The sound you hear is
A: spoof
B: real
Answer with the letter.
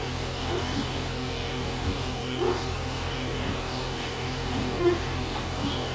A